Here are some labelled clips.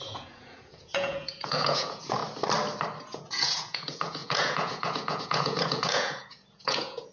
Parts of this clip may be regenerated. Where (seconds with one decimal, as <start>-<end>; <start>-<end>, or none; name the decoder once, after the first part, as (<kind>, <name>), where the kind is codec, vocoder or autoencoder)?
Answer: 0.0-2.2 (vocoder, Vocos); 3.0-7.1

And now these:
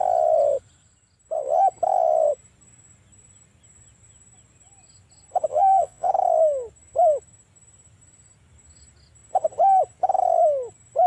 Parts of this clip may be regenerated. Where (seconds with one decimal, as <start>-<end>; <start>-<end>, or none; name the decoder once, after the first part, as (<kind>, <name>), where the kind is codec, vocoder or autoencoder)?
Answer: 5.5-6.1 (vocoder, Vocos)

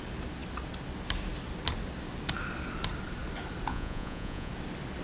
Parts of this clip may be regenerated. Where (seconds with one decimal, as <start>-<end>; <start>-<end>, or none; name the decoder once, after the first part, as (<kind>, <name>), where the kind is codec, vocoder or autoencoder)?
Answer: 3.7-4.5 (vocoder, Vocos)